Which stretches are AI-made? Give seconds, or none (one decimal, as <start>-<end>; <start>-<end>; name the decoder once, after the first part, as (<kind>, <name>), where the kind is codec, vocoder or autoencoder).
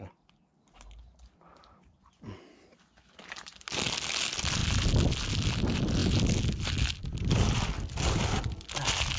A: none